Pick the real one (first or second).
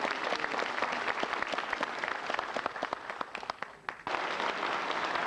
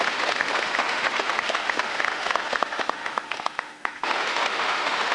first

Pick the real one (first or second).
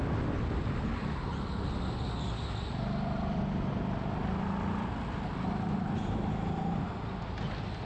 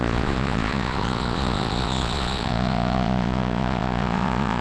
first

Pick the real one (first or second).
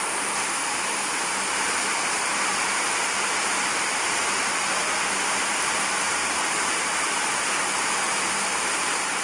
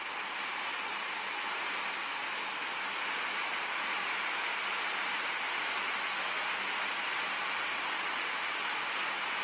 second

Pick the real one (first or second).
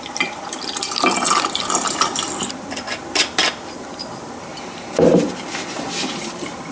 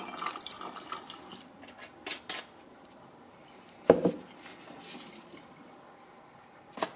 second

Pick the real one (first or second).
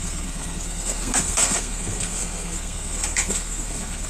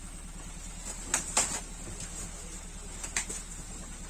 second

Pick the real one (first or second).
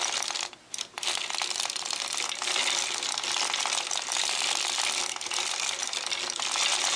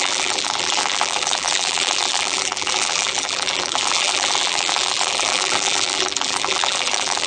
first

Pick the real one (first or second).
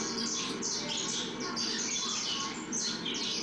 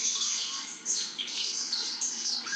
first